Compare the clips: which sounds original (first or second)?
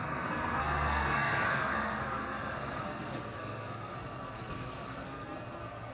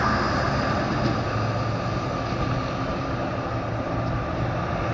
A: second